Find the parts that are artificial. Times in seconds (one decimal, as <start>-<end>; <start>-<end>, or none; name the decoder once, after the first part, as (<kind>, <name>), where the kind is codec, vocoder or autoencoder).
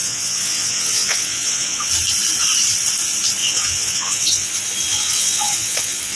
0.0-1.9 (vocoder, WaveNeXt); 3.4-4.5; 4.9-6.2